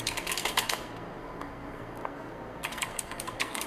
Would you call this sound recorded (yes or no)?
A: no